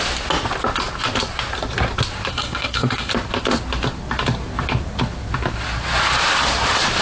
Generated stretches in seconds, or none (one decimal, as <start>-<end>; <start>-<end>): 2.3-3.1